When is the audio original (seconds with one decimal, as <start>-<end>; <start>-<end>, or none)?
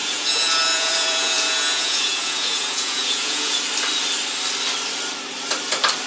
3.6-6.1